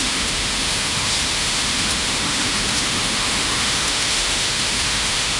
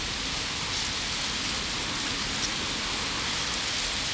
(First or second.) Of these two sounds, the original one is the second